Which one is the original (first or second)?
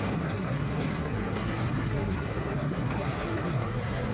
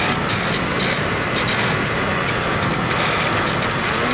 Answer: second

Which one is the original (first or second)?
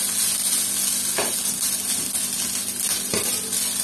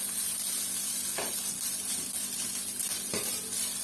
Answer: first